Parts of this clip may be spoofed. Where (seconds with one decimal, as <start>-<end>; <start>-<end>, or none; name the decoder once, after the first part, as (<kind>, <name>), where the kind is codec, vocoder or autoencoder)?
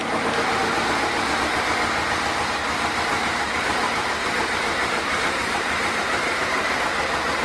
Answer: 3.1-6.6 (vocoder, BigVGAN v2)